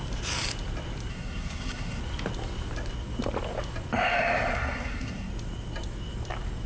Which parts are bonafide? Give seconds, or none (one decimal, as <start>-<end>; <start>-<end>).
0.0-1.1; 2.0-4.5; 5.3-6.7